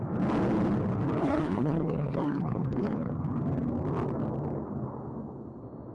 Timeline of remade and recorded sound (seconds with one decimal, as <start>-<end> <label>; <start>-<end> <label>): 0.0-1.2 recorded; 1.2-3.1 remade; 3.1-5.9 recorded